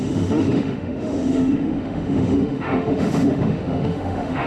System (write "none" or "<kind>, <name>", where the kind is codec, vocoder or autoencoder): autoencoder, DAC-VAE